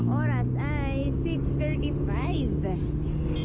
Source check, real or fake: real